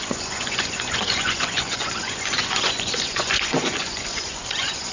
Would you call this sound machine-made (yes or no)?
yes